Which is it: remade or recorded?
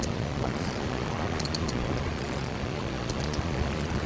remade